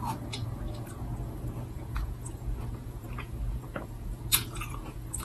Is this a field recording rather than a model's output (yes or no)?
no